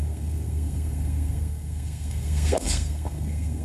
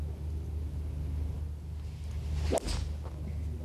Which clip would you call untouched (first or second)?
second